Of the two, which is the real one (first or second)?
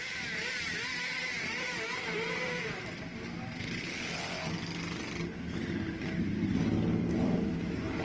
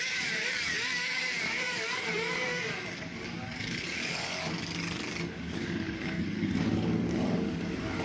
first